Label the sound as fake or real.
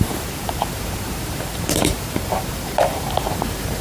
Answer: fake